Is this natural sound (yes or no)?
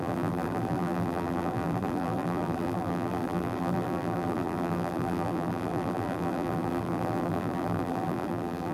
no